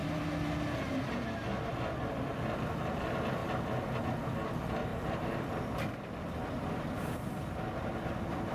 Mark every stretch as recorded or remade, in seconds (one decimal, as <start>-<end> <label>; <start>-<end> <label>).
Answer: 0.0-8.5 remade